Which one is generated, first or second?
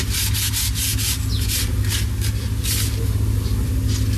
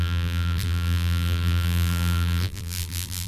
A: second